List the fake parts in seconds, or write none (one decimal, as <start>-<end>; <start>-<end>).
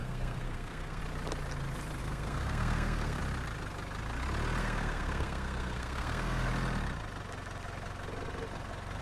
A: 0.0-1.0; 2.0-3.2; 4.6-6.5